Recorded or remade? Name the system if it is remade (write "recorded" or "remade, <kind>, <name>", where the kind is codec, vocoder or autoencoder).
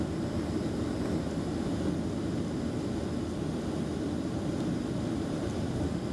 recorded